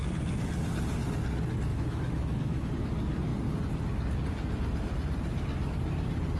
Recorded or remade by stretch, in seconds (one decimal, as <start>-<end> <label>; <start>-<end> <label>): 0.0-1.7 recorded; 1.7-2.7 remade; 2.7-6.4 recorded